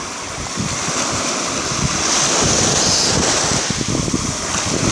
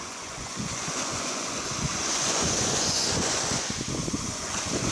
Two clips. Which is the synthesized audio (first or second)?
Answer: second